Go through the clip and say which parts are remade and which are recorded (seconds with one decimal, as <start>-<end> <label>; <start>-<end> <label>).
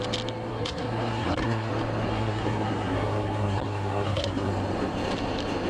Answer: 0.0-0.5 recorded; 0.5-1.7 remade; 1.7-2.1 recorded; 2.1-4.5 remade; 4.5-5.7 recorded